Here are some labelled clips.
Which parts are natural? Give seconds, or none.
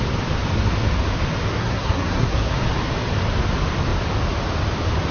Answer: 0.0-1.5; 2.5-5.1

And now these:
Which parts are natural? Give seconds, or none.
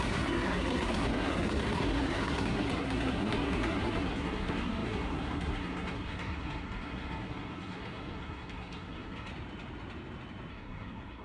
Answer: 9.3-10.5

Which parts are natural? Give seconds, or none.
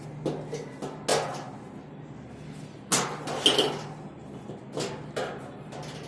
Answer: 0.0-6.1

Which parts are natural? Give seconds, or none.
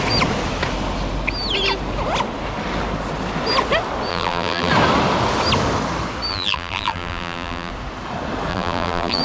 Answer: 0.0-4.1; 4.7-6.3; 7.7-8.5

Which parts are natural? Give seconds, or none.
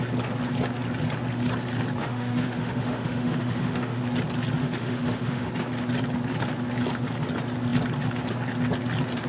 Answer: 0.0-2.0; 4.0-4.6; 5.5-9.3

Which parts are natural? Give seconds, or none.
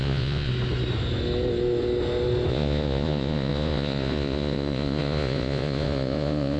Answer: 0.5-2.5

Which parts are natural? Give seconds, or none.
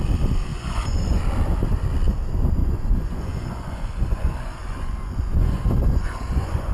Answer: 0.0-0.5; 1.2-2.6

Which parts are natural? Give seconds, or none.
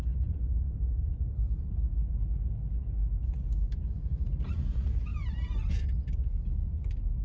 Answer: 1.0-7.2